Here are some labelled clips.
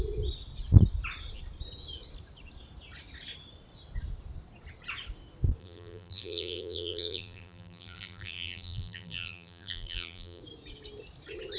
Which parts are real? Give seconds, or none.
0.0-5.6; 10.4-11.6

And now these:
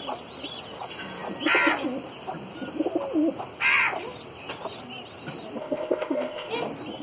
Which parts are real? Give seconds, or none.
0.0-5.6; 6.5-7.0